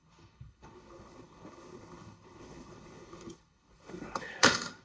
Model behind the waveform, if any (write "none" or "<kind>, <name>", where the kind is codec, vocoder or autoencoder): codec, HILCodec